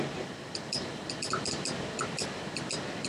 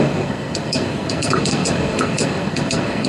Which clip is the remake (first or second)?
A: second